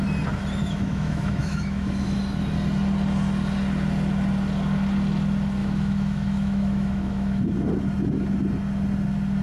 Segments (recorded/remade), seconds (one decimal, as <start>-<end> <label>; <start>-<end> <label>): 0.0-0.6 recorded; 0.6-2.2 remade; 2.2-5.6 recorded; 5.6-7.4 remade; 7.4-9.4 recorded